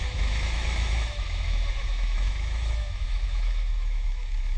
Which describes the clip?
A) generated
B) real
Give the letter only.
A